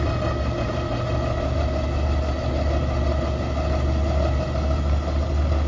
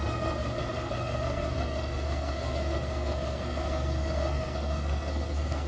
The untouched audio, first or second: first